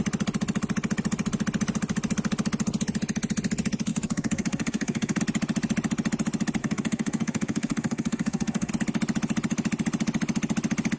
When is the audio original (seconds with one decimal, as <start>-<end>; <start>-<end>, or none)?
0.0-3.9; 5.2-6.6; 8.7-11.0